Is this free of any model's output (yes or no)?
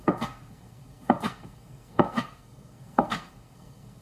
no